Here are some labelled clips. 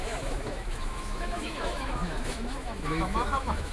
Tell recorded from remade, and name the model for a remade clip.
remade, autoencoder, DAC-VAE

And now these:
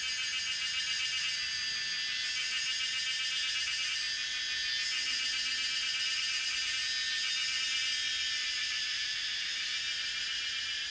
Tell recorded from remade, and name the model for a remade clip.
recorded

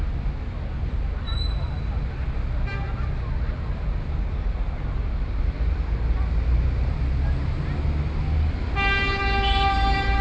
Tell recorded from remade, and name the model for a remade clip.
recorded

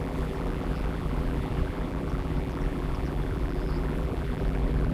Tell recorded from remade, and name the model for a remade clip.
remade, vocoder, BigVGAN v2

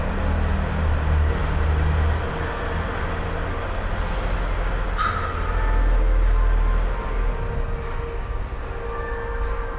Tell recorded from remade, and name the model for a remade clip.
recorded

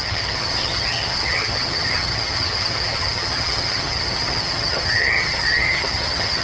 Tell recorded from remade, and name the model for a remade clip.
remade, vocoder, HiFi-GAN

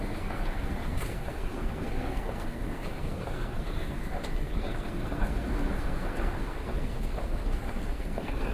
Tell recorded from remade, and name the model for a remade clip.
remade, codec, SNAC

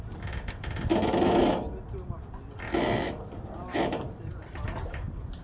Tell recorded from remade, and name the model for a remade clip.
remade, vocoder, BigVGAN v2